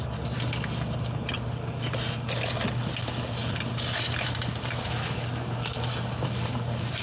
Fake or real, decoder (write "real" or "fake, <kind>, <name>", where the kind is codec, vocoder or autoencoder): real